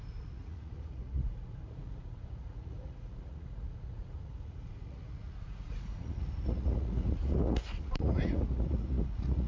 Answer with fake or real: fake